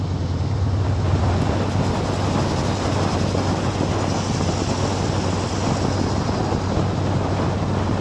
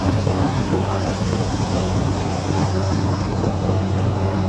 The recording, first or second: first